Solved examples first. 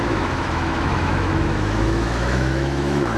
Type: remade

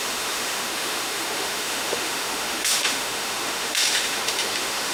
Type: remade